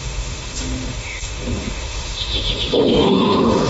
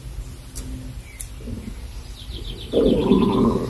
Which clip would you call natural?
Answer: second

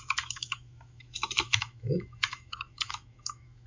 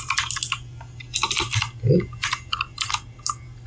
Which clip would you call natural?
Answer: second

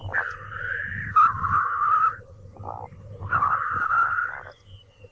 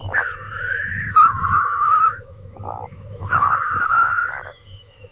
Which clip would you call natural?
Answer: first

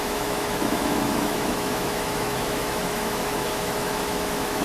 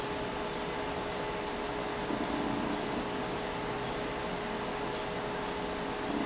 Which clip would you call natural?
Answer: second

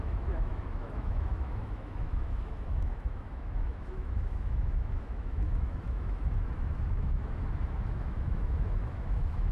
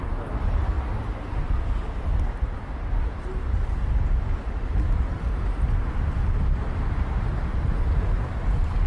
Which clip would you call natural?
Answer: second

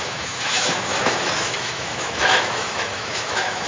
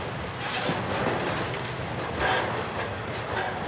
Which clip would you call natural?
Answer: second